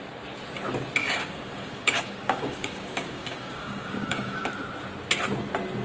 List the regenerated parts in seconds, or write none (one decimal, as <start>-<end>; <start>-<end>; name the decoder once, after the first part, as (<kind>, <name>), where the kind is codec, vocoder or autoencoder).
1.0-4.5 (codec, DAC)